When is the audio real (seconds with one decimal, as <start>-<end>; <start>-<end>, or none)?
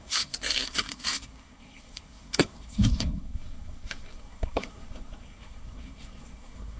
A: none